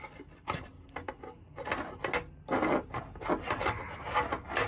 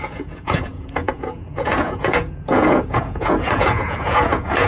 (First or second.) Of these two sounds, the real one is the first